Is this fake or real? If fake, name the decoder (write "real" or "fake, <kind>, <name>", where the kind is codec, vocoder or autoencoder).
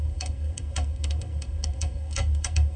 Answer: fake, codec, SNAC